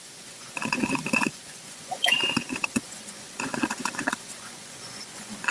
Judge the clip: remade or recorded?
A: remade